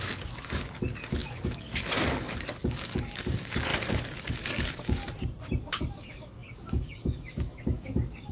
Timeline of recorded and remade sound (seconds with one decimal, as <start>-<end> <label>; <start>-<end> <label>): 0.0-3.7 remade; 3.7-4.3 recorded; 4.3-5.0 remade; 5.0-5.6 recorded; 5.6-8.3 remade

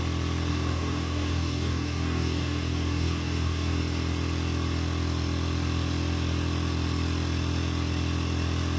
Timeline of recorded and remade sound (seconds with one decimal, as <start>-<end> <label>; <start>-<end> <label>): 0.0-0.5 recorded; 0.5-3.8 remade; 3.8-8.8 recorded

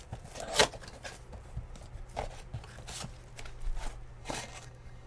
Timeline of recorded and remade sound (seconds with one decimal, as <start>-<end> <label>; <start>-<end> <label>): 0.0-4.2 recorded; 4.2-5.1 remade

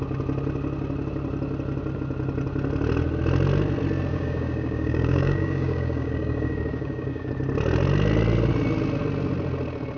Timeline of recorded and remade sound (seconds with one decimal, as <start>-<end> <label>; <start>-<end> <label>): 0.0-4.1 recorded; 4.1-7.3 remade; 7.3-10.0 recorded

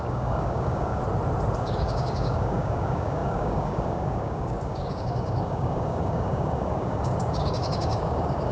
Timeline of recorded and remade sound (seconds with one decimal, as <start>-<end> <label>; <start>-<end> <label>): 0.0-1.0 remade; 1.0-1.6 recorded; 1.6-8.5 remade

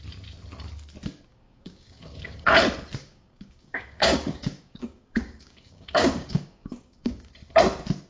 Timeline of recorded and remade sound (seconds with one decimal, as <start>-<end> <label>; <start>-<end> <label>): 0.0-1.3 recorded; 1.3-2.5 remade; 2.5-3.0 recorded; 3.0-7.3 remade; 7.3-8.1 recorded

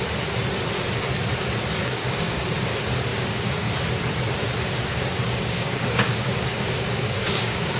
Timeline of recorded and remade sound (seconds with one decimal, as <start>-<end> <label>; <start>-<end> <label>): 0.0-1.8 recorded; 1.8-2.4 remade; 2.4-3.1 recorded; 3.1-3.7 remade; 3.7-4.9 recorded; 4.9-7.8 remade

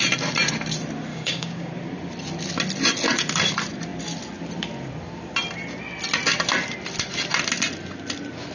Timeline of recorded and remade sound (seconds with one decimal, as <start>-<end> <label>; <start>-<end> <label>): 0.0-1.1 recorded; 1.1-1.7 remade; 1.7-8.5 recorded